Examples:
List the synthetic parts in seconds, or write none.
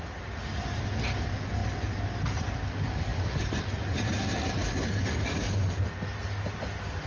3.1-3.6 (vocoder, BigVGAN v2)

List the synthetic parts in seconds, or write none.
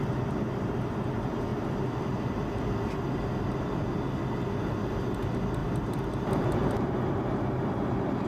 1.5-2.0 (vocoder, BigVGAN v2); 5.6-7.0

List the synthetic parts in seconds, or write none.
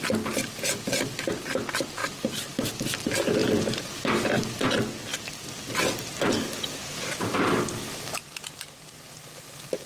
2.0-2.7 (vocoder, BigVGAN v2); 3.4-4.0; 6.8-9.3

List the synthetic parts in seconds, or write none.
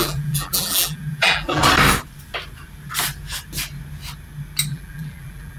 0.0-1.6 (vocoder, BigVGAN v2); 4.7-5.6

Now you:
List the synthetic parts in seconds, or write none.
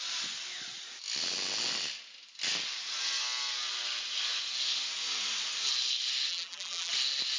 6.3-6.9 (vocoder, BigVGAN v2)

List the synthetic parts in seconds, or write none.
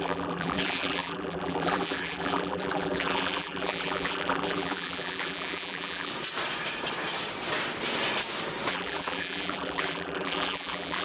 0.0-6.1 (vocoder, BigVGAN v2); 8.7-11.0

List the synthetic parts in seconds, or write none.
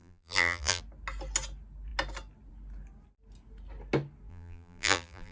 0.0-0.8 (vocoder, BigVGAN v2); 4.3-5.3